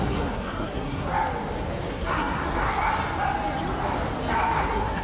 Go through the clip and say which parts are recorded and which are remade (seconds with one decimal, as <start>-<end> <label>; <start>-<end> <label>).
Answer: 0.0-1.1 remade; 1.1-1.9 recorded; 1.9-2.8 remade; 2.8-4.6 recorded; 4.6-5.0 remade